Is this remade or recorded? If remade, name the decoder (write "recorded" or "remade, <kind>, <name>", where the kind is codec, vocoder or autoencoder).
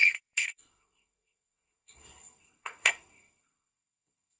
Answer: remade, codec, SNAC